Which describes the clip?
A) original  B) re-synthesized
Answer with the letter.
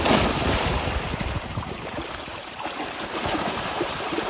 B